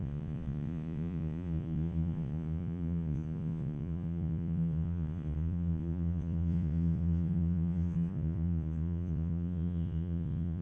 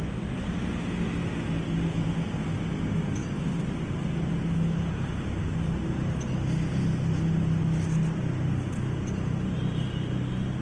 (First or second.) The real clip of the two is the second